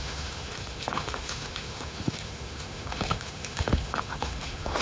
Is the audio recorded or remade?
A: remade